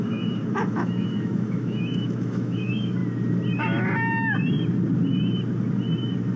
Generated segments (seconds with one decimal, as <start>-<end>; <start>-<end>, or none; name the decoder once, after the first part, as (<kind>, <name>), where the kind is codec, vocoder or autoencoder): 0.0-3.0 (autoencoder, DAC-VAE)